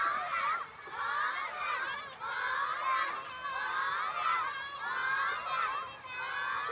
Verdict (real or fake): real